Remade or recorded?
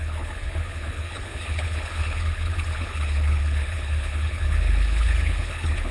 remade